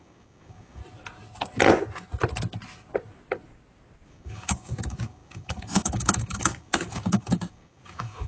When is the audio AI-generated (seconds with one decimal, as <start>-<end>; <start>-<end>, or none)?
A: 0.0-0.8; 4.1-8.3